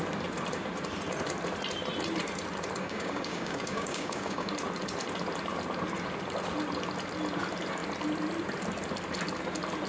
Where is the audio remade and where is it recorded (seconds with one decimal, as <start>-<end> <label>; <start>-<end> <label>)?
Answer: 0.0-2.8 recorded; 2.8-4.5 remade; 4.5-9.9 recorded